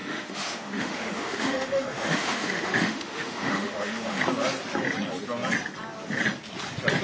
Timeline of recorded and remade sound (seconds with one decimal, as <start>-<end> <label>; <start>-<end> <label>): 0.0-4.2 remade; 4.2-7.0 recorded